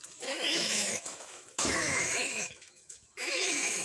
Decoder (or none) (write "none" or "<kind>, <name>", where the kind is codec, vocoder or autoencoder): autoencoder, DAC-VAE